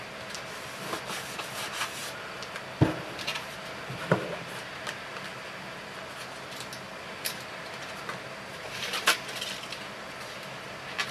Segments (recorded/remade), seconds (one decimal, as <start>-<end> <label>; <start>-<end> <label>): 0.0-11.1 recorded